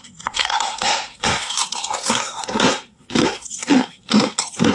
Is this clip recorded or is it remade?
remade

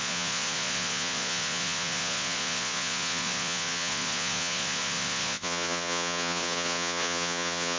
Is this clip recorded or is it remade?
remade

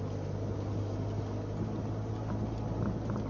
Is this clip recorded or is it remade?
recorded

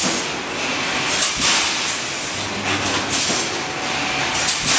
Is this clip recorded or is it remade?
recorded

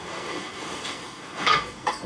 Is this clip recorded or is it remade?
remade